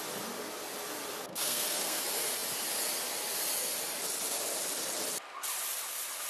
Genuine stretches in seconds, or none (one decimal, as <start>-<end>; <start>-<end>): 0.0-1.3; 2.0-6.3